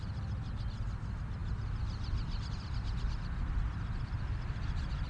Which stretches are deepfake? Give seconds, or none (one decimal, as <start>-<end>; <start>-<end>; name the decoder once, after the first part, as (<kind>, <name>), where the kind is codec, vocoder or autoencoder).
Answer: none